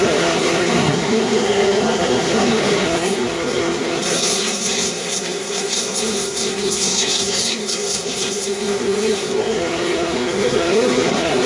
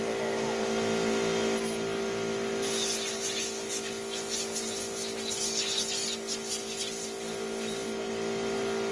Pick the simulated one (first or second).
first